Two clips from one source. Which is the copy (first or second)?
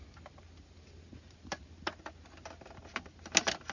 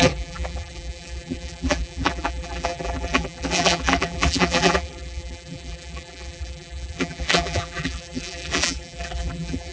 second